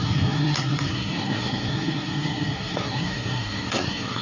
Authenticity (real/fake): fake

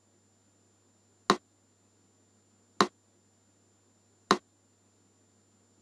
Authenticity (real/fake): real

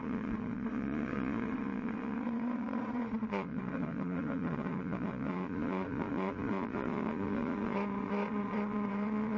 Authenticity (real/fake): fake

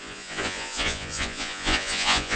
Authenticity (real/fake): fake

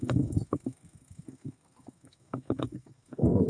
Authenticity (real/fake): fake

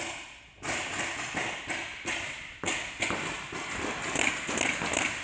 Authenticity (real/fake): real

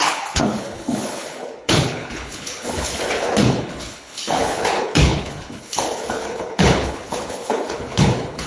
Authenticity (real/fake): fake